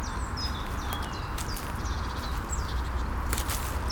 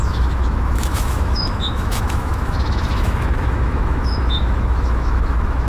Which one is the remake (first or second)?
second